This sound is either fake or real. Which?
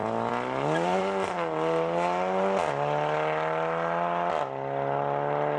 real